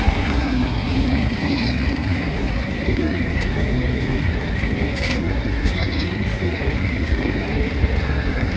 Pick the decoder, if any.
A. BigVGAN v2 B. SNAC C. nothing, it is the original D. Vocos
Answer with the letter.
B